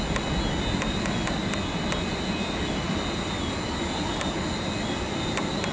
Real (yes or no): yes